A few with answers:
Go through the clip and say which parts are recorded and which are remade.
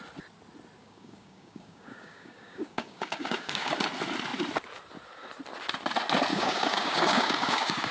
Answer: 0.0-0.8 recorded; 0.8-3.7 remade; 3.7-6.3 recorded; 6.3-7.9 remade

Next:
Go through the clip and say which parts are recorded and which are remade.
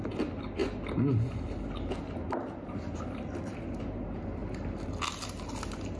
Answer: 0.0-6.0 recorded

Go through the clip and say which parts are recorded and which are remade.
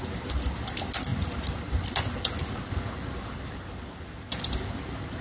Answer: 0.0-5.2 recorded